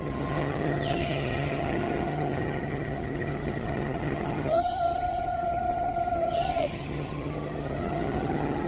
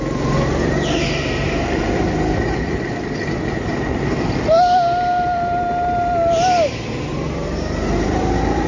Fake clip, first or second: first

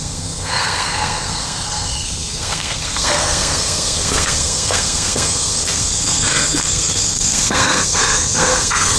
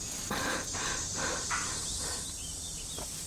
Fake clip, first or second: first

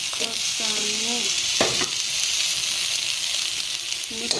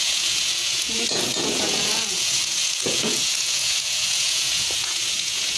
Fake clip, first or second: second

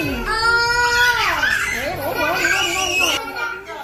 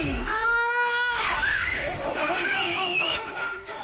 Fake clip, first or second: second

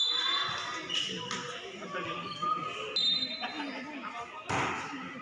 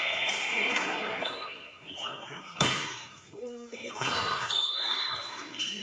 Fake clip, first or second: second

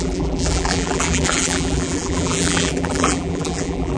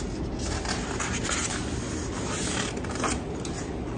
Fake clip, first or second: first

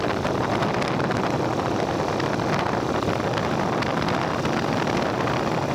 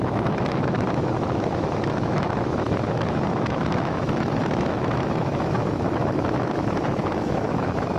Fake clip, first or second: second